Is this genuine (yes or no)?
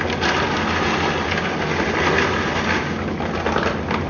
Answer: yes